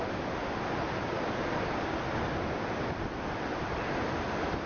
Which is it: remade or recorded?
recorded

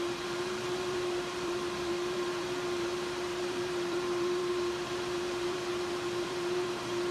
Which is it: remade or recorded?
remade